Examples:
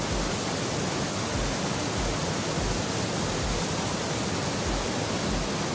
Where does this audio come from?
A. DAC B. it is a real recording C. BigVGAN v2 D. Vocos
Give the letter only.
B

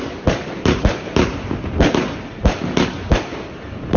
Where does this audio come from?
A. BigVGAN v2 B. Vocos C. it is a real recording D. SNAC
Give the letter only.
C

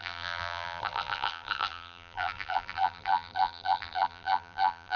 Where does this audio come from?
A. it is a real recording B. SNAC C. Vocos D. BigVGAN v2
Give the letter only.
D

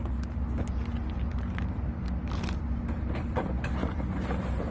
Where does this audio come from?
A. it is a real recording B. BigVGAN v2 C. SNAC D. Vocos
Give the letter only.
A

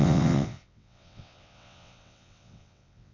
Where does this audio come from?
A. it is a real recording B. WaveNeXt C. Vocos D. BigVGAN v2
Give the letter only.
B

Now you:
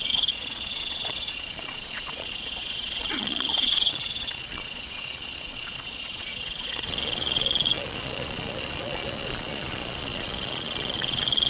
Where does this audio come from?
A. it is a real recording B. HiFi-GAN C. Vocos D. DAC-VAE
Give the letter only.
C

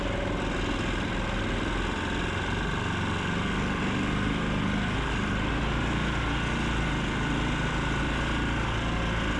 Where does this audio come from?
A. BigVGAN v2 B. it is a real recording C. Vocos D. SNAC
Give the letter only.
B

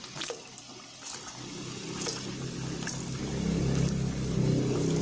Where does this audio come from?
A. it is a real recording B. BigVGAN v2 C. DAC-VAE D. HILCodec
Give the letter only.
A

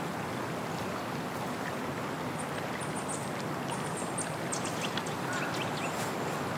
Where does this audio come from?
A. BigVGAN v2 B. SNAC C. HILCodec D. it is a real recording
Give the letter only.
D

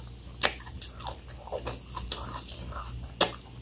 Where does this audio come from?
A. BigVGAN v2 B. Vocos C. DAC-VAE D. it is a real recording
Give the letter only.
D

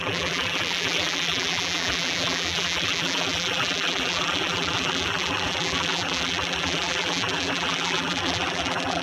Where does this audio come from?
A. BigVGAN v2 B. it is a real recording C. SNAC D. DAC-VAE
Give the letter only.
A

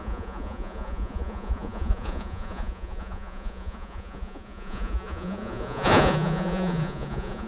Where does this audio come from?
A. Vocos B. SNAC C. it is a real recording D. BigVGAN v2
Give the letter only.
A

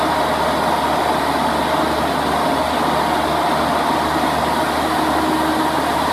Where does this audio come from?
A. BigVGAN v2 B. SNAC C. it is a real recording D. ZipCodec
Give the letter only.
C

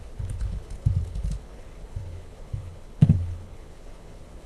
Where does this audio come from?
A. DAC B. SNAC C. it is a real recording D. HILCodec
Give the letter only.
D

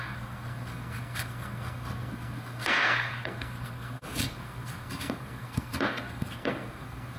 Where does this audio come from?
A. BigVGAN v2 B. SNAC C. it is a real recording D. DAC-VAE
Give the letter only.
B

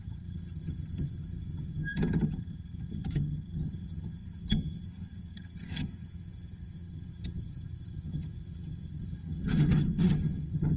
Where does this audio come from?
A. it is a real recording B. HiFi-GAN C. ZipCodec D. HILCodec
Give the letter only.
B